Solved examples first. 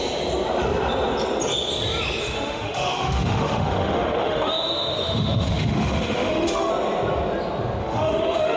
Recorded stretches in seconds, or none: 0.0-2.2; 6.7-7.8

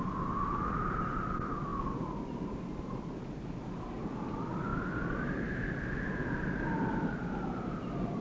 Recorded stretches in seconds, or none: 0.0-8.2